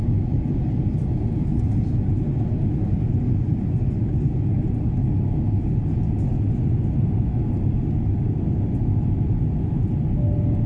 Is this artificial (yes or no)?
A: no